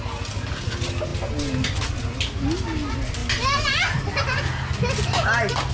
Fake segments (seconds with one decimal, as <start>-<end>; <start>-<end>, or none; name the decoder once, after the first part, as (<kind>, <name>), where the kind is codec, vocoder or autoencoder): none